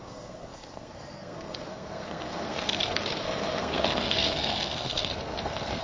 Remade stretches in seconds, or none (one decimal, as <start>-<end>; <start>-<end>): 0.0-5.8

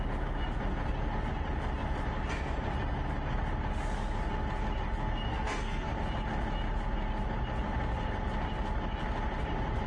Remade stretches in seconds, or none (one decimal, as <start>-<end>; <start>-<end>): 5.3-5.9